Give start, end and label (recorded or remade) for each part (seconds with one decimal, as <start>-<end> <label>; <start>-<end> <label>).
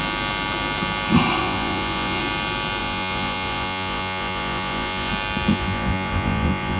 0.0-1.4 recorded; 1.4-2.2 remade; 2.2-2.8 recorded; 2.8-5.1 remade; 5.1-5.5 recorded; 5.5-6.8 remade